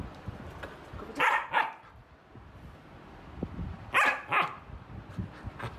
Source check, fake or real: real